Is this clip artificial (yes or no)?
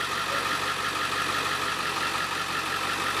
no